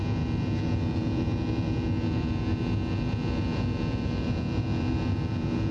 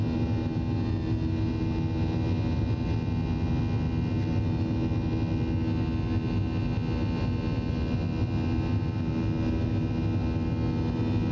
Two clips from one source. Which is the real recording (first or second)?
second